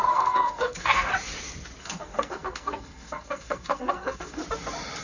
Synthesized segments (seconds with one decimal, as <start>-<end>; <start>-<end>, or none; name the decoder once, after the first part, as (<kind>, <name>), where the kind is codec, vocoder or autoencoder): 0.0-1.1 (codec, SNAC); 1.8-4.4